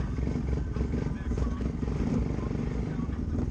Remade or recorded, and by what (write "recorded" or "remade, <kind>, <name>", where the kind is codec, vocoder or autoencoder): recorded